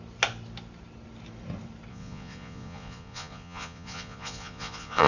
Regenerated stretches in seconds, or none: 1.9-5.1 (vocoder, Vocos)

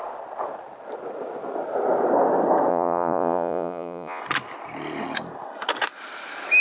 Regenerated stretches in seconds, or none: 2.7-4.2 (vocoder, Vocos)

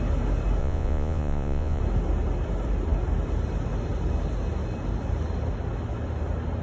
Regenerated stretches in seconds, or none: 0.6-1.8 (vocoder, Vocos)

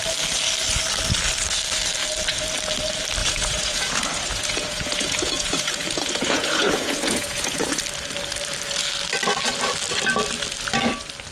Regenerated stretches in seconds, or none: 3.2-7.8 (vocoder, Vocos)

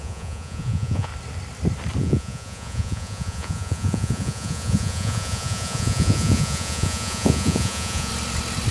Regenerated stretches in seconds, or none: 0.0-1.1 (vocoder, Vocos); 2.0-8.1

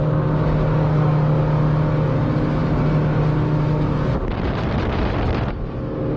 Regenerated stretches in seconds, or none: none

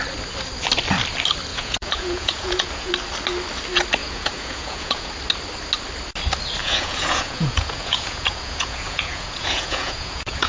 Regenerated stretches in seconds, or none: 1.5-2.9 (vocoder, Vocos); 4.0-5.1; 6.6-10.5